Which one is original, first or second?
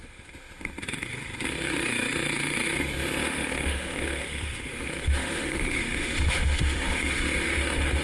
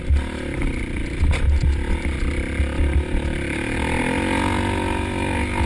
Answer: second